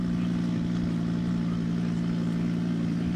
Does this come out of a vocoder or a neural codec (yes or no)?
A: no